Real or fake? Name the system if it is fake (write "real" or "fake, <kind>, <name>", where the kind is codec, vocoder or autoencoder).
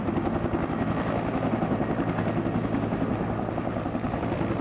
real